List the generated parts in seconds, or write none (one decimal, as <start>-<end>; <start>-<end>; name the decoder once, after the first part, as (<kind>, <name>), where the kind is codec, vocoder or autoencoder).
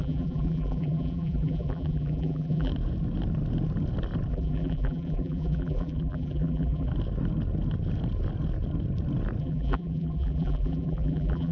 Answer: 0.0-2.7 (vocoder, BigVGAN v2); 4.3-6.9; 9.4-11.5